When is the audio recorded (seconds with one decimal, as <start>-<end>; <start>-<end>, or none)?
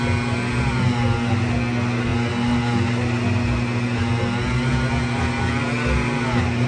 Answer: 0.0-6.7